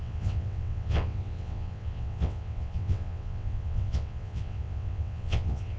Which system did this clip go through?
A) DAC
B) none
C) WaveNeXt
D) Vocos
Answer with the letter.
C